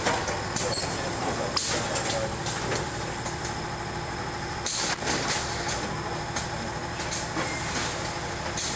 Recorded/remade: recorded